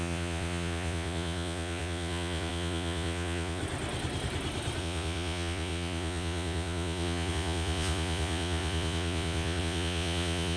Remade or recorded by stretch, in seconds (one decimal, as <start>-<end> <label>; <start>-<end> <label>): 0.0-3.6 remade; 3.6-4.8 recorded; 4.8-10.6 remade